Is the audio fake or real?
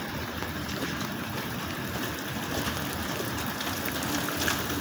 real